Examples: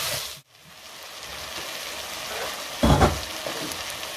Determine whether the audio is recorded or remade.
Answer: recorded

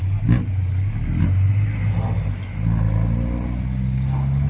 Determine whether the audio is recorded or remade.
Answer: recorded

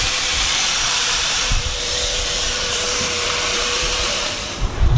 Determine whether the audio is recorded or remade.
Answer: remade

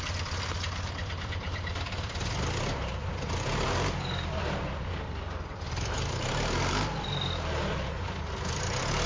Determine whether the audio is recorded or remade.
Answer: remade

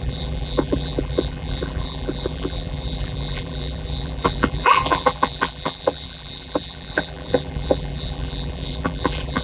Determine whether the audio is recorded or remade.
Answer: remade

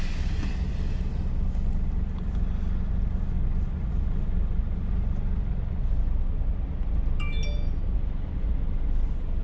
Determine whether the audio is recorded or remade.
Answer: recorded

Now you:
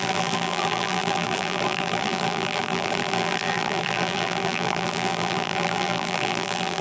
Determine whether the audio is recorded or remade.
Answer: remade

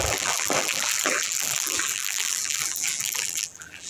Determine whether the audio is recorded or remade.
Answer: remade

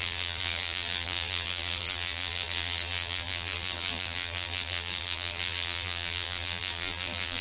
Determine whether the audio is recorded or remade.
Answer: remade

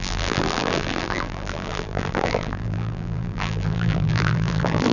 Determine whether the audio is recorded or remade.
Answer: remade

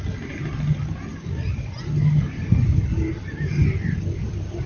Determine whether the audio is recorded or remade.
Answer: recorded